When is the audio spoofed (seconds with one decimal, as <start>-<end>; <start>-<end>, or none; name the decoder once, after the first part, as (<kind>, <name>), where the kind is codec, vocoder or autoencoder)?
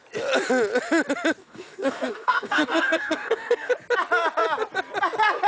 1.4-3.7 (codec, DAC)